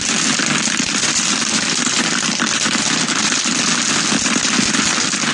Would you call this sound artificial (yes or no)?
no